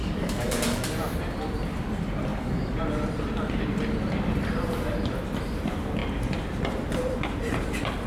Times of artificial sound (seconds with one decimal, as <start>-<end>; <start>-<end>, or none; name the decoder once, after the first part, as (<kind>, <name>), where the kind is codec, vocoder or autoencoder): 0.0-0.8 (codec, DAC); 2.3-2.8